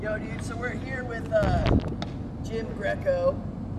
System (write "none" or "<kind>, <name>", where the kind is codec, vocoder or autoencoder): none